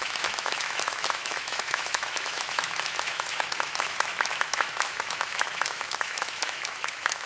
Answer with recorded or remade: remade